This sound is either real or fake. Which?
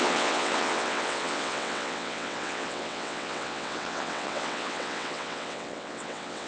fake